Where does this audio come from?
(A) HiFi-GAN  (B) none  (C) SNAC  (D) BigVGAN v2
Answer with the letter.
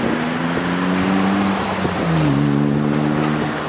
B